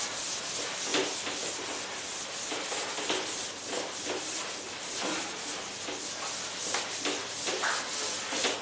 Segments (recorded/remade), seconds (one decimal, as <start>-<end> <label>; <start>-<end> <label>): 0.0-8.6 recorded